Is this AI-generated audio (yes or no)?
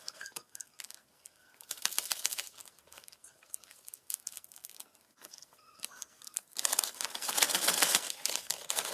yes